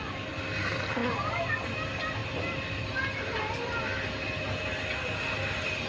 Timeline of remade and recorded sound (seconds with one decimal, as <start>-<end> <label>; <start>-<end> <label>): 0.0-5.9 recorded